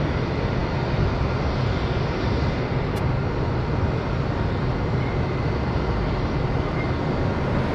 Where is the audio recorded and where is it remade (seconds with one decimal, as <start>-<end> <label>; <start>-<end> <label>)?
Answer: 0.0-7.7 recorded